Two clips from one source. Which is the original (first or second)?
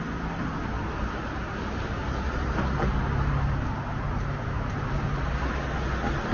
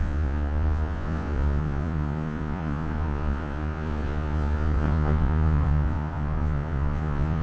first